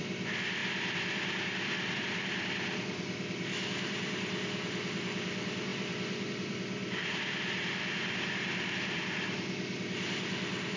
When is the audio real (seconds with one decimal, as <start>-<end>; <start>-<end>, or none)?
none